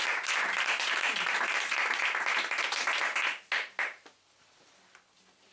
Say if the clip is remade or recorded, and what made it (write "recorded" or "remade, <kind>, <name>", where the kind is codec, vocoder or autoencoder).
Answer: recorded